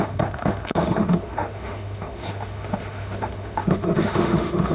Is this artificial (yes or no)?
yes